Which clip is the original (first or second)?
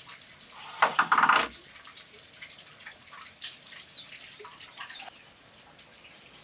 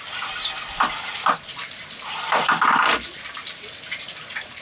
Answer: first